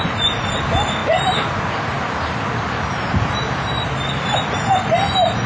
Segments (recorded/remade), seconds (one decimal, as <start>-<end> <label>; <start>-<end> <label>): 0.0-5.5 recorded